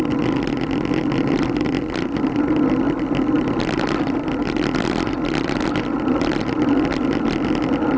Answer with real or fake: real